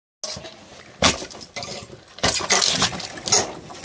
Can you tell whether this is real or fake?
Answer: real